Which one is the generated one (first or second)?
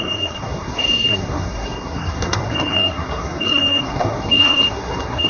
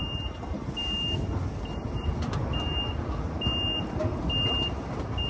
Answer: first